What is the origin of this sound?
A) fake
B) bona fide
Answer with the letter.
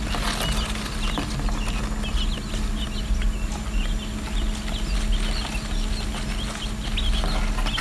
B